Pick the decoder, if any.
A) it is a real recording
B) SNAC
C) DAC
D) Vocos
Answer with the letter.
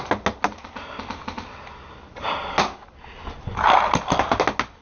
A